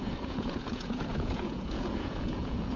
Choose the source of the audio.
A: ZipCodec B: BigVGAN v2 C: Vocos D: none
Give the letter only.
C